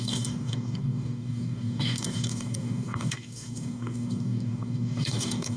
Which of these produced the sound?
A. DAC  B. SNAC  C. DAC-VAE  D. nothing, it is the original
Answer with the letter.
A